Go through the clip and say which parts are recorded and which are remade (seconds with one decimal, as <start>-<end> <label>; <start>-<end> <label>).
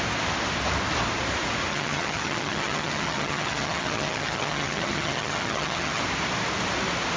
0.0-1.7 recorded; 1.7-6.0 remade; 6.0-7.2 recorded